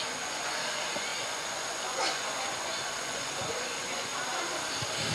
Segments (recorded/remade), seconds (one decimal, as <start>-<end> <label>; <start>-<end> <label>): 0.0-4.1 remade; 4.1-5.1 recorded